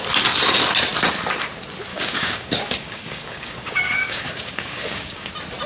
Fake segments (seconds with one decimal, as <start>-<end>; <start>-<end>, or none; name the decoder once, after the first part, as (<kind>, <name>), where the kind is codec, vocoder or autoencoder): 1.9-5.3 (codec, DAC)